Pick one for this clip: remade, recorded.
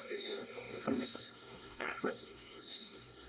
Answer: remade